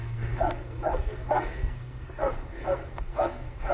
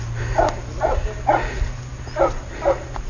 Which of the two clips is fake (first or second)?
first